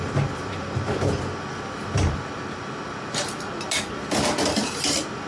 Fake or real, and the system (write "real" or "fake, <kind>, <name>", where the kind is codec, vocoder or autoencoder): real